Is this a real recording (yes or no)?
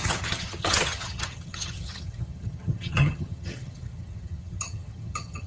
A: no